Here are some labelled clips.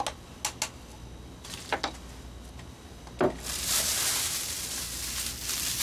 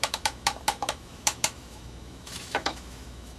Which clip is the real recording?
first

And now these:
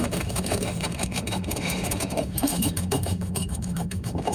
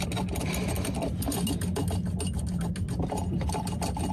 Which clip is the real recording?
second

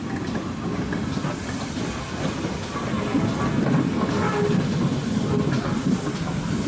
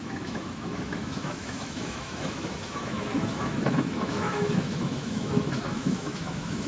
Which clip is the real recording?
first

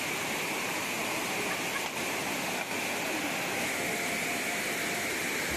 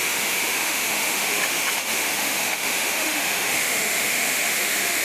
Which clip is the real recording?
first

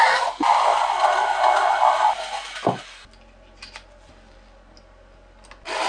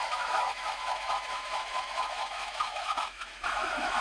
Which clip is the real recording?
first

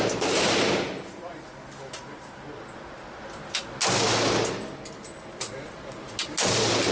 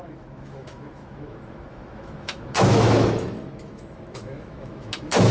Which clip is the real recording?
first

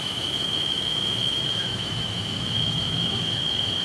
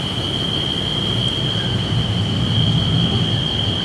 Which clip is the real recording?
second